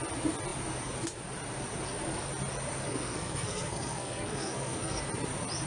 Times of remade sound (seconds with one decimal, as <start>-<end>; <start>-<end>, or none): 2.8-5.0